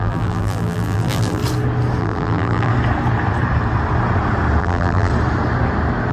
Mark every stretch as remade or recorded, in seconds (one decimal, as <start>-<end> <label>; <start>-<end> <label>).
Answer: 0.0-1.4 remade; 1.4-2.0 recorded; 2.0-2.7 remade; 2.7-4.6 recorded; 4.6-5.1 remade; 5.1-6.1 recorded